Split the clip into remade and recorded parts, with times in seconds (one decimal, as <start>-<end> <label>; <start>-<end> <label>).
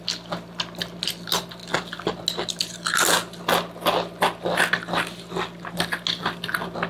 0.0-6.9 recorded